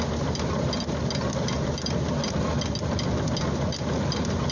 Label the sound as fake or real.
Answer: real